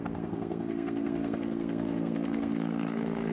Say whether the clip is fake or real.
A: fake